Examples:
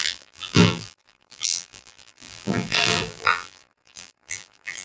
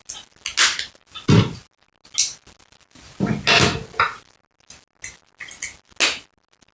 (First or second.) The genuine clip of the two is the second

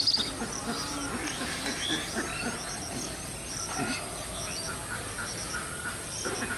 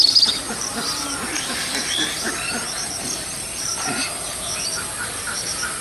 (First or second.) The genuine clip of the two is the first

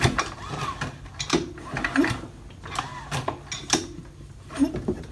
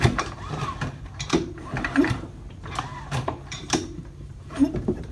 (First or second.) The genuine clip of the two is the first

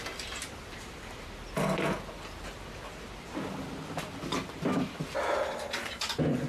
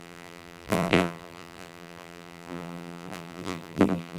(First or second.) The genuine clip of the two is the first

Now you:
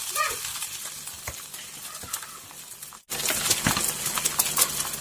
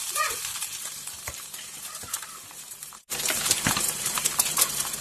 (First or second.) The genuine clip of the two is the first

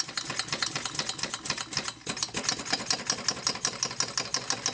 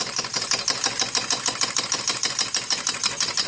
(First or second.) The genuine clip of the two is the first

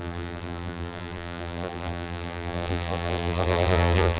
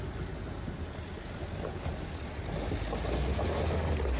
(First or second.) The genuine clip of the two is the second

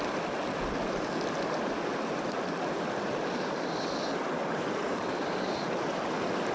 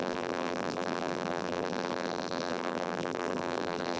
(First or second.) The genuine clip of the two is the first